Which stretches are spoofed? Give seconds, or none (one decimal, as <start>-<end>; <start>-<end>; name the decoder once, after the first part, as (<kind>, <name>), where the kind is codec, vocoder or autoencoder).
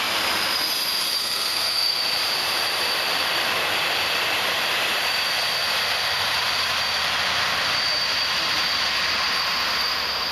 1.2-2.0 (codec, SNAC)